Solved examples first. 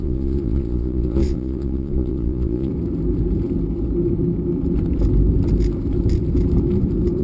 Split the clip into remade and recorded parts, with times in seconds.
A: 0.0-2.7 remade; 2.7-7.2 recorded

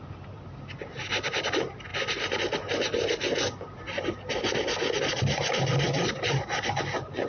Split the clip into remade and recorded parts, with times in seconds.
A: 0.0-7.3 recorded